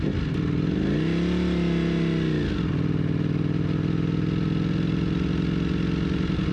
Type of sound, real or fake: real